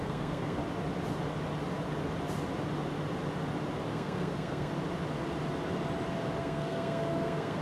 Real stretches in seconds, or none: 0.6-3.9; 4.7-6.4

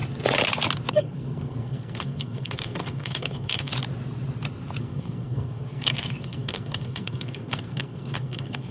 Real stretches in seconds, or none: 0.0-0.9; 3.7-4.8

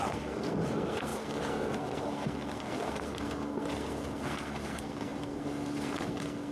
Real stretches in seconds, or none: none

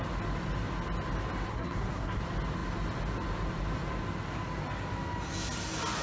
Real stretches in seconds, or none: 0.0-1.5; 2.2-6.0

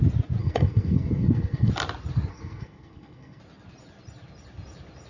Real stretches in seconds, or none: 0.0-0.4; 1.7-2.3; 3.4-5.1

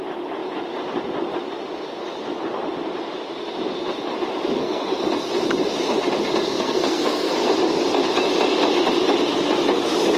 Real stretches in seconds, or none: 0.0-4.6; 5.1-6.4; 7.5-10.2